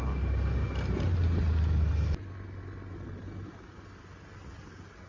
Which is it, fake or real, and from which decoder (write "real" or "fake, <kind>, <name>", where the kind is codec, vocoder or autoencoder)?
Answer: real